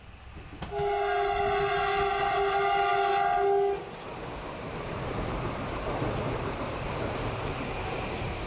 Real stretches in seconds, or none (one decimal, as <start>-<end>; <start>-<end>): 0.0-8.5